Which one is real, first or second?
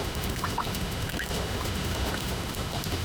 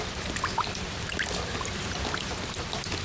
second